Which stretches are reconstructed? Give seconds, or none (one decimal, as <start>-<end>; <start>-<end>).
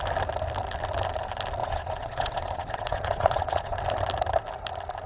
1.6-3.8